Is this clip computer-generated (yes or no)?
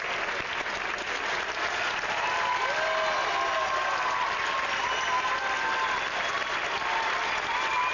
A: no